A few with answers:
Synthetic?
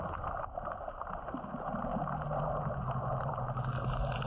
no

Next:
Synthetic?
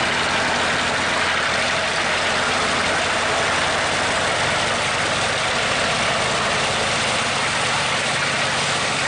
no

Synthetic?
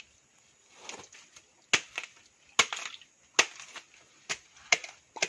no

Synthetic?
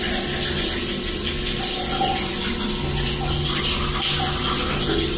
no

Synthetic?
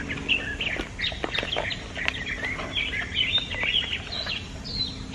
no